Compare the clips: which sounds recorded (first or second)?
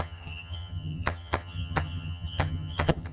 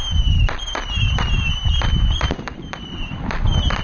second